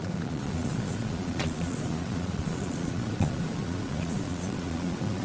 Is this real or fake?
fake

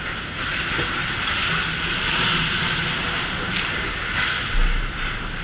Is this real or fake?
real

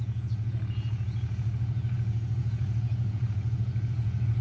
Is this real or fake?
fake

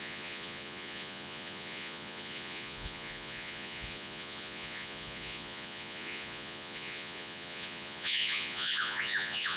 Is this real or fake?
fake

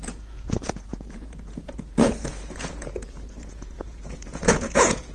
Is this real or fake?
fake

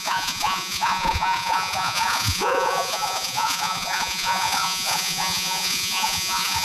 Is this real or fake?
fake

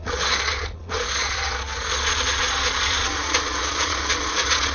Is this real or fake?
fake